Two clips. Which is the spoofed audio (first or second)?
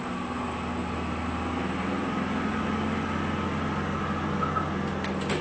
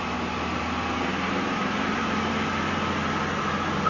second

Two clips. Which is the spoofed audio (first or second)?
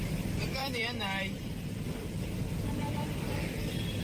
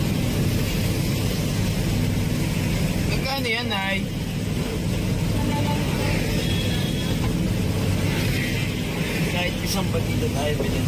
first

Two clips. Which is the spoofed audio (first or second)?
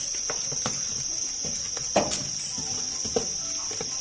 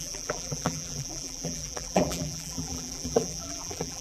second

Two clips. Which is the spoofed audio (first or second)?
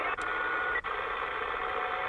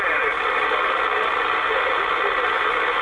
first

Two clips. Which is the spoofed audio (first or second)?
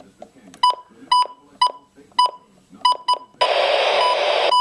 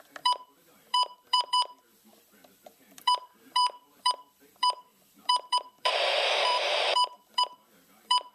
second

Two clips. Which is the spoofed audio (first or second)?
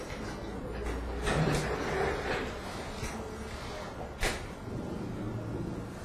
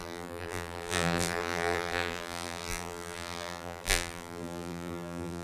second